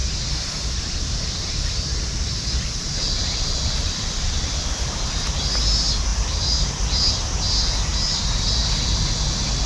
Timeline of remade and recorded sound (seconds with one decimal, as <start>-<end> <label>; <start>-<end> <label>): 0.0-6.1 recorded; 6.1-6.7 remade; 6.7-7.9 recorded; 7.9-8.8 remade; 8.8-9.7 recorded